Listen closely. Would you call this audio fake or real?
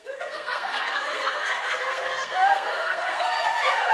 fake